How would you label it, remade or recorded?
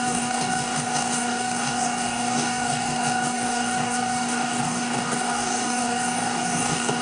remade